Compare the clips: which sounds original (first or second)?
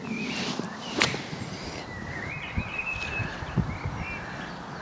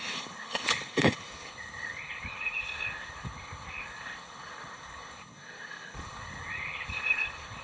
first